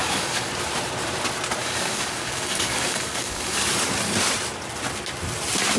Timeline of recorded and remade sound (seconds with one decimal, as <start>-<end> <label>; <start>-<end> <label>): 0.0-0.5 remade; 0.5-1.6 recorded; 1.6-3.7 remade; 3.7-5.8 recorded